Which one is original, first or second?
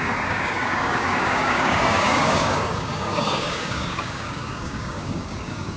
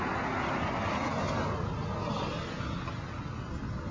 second